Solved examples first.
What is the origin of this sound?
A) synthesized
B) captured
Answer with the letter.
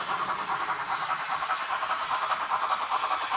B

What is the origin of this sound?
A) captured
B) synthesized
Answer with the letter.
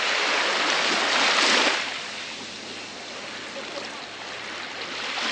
A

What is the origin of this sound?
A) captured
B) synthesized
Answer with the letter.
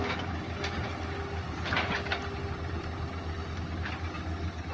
A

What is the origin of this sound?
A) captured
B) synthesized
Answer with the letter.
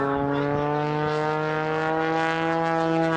A